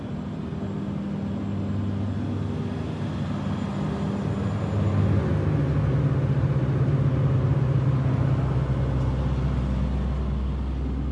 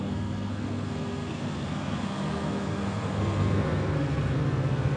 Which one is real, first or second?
first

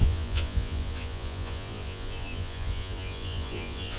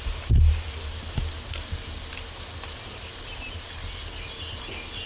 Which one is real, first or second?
second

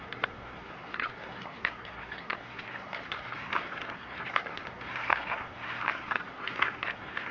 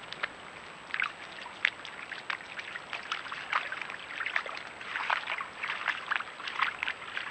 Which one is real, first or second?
second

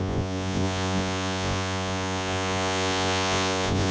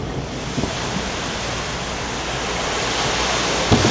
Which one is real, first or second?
second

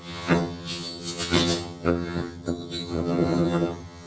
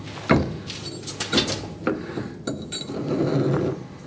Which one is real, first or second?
second